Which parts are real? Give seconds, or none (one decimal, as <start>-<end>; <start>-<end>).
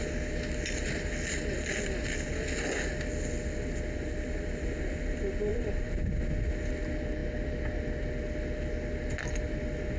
0.0-5.5; 6.0-10.0